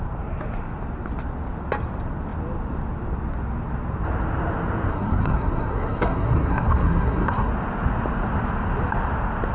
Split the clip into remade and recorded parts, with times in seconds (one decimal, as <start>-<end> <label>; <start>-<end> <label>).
0.0-4.9 recorded; 4.9-7.5 remade; 7.5-9.5 recorded